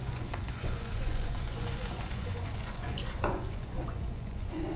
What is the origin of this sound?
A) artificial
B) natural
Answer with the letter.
A